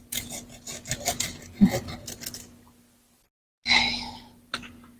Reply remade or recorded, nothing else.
recorded